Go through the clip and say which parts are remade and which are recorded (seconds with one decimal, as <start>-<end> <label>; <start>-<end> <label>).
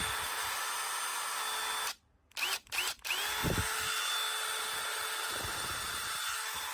0.0-0.4 remade; 0.4-1.9 recorded; 1.9-3.4 remade; 3.4-4.8 recorded; 4.8-6.7 remade